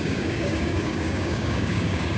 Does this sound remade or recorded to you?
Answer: remade